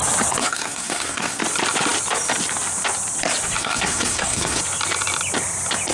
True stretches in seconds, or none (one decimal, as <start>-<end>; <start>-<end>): 0.0-0.4; 1.4-3.6; 4.6-5.9